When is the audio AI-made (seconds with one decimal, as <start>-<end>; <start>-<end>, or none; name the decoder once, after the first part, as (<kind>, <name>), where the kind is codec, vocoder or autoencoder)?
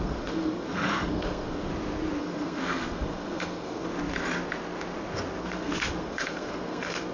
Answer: 0.0-1.7 (codec, SNAC); 2.2-3.9; 5.4-7.1